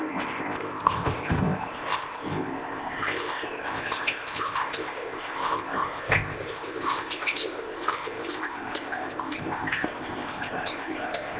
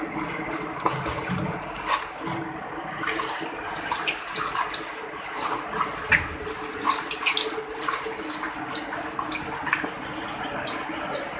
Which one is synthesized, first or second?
first